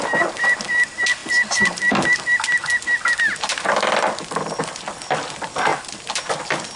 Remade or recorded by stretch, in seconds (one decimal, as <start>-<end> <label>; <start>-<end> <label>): 0.0-6.8 recorded